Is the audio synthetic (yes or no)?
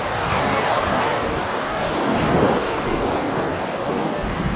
yes